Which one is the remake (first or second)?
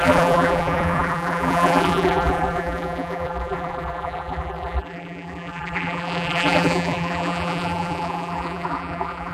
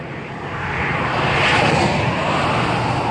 first